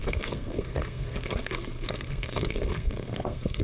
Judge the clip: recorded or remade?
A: remade